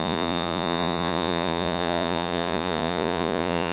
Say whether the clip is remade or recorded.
remade